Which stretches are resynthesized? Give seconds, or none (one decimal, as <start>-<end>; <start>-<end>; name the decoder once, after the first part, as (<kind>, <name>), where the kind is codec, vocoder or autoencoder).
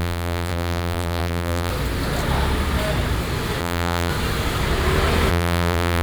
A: 0.0-1.7 (vocoder, BigVGAN v2); 3.6-4.1; 5.3-6.0